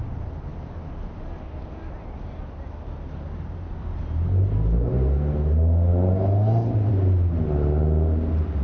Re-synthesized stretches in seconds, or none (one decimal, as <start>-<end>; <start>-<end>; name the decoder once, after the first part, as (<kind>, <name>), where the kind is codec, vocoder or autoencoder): 4.9-5.5 (codec, SNAC)